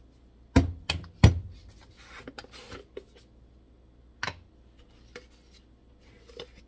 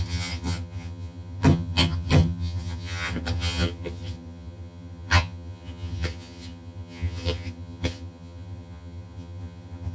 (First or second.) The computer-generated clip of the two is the second